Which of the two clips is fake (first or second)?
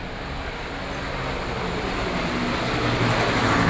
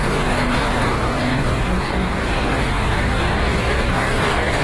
second